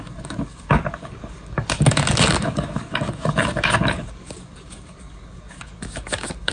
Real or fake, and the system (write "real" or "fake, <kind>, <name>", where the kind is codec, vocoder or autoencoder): fake, codec, DAC